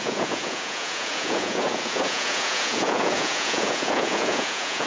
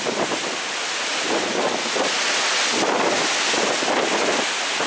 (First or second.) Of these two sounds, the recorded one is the second